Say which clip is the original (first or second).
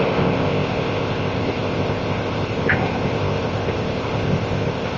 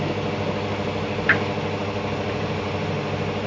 second